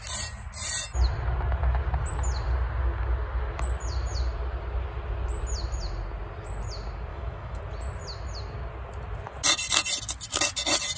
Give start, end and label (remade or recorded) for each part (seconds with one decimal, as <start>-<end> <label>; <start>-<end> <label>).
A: 0.0-7.1 recorded; 7.1-7.6 remade; 7.6-11.0 recorded